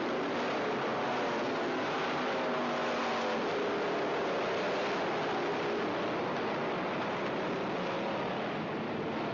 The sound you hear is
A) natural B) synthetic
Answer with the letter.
A